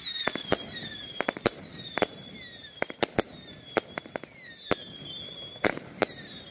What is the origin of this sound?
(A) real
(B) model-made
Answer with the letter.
A